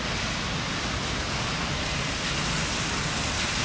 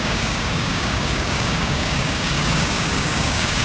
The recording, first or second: first